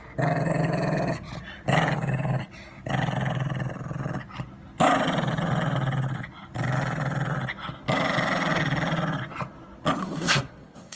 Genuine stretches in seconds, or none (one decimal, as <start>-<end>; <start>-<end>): 0.0-10.0

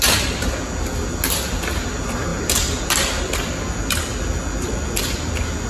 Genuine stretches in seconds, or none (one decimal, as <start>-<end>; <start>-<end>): 0.0-5.7

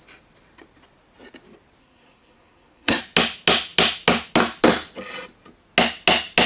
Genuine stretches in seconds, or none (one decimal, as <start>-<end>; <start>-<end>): 0.0-1.8; 3.0-6.5

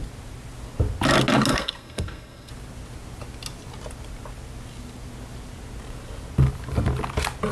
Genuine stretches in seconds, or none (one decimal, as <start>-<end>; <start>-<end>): 0.0-1.5; 2.5-7.5

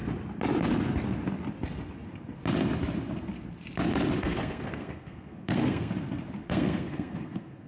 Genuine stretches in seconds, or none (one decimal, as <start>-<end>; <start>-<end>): 0.0-4.2; 5.9-6.4

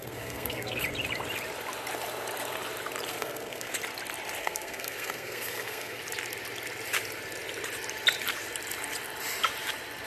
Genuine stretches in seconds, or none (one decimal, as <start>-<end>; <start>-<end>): 0.8-3.1; 3.7-4.4; 6.0-10.1